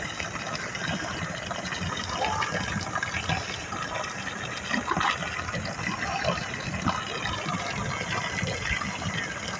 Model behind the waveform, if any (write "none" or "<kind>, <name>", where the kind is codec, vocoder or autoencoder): none